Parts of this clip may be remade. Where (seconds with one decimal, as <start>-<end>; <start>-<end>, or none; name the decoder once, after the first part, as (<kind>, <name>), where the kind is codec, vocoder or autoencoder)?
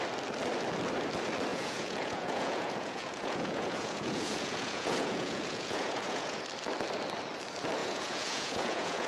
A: 1.5-6.4 (vocoder, Vocos); 7.8-9.1